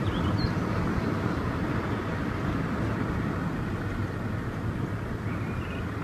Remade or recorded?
recorded